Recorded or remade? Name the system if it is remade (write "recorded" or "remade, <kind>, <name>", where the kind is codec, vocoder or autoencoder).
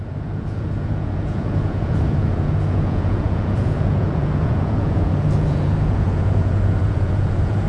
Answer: remade, vocoder, Vocos